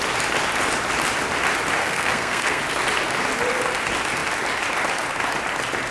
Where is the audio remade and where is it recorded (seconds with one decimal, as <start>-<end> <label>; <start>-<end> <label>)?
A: 0.0-1.8 recorded; 1.8-2.6 remade; 2.6-5.9 recorded